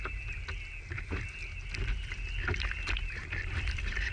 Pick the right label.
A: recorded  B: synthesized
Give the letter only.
A